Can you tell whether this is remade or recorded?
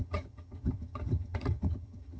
remade